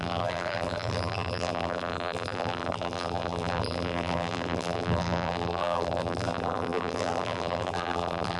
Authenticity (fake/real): fake